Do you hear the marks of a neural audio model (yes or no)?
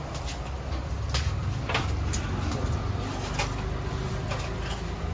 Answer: no